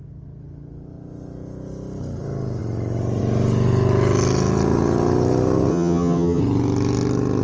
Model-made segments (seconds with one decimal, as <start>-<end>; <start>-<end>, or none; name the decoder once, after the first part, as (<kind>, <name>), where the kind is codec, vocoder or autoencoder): 5.7-6.4 (vocoder, HiFi-GAN)